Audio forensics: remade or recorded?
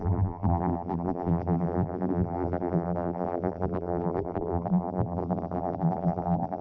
remade